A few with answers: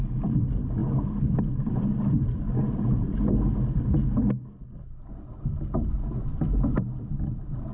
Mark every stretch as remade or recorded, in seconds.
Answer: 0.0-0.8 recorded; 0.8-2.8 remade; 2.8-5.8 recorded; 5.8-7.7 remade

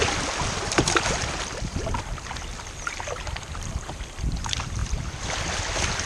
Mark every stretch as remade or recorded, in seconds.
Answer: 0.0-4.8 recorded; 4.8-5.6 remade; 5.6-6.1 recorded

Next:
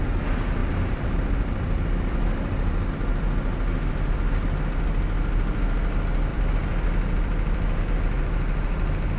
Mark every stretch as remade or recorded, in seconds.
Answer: 0.0-0.6 recorded; 0.6-2.9 remade; 2.9-6.3 recorded; 6.3-7.8 remade; 7.8-9.2 recorded

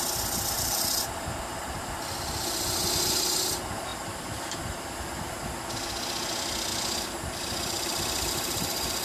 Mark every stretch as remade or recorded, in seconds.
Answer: 0.0-3.9 recorded; 3.9-5.3 remade; 5.3-6.7 recorded; 6.7-8.3 remade; 8.3-9.0 recorded